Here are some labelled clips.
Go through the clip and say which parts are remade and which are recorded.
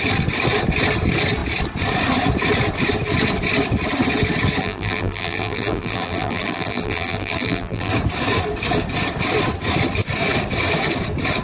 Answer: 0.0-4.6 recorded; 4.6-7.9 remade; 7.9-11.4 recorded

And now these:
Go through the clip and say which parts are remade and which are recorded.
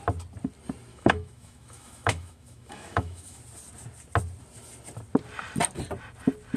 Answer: 0.0-0.9 recorded; 0.9-3.4 remade; 3.4-6.6 recorded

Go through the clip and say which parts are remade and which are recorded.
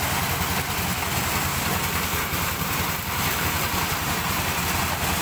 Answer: 0.0-1.5 recorded; 1.5-4.6 remade; 4.6-5.2 recorded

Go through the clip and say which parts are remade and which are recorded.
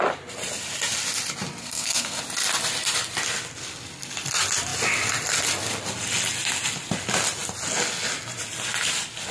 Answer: 0.0-1.6 recorded; 1.6-2.2 remade; 2.2-9.3 recorded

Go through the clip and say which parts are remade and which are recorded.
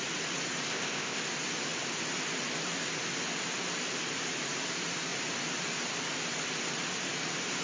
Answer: 0.0-0.7 recorded; 0.7-1.2 remade; 1.2-7.6 recorded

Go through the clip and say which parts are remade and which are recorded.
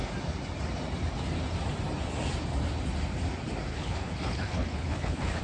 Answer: 0.0-3.7 recorded; 3.7-5.4 remade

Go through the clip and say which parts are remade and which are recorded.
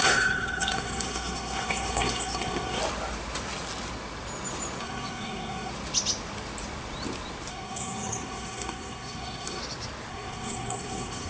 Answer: 0.0-2.8 remade; 2.8-4.8 recorded; 4.8-5.7 remade; 5.7-7.5 recorded; 7.5-9.6 remade; 9.6-10.1 recorded; 10.1-11.3 remade